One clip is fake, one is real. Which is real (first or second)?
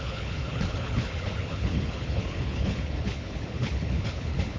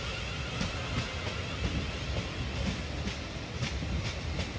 second